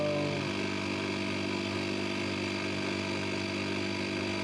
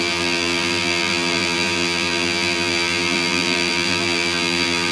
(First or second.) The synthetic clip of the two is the second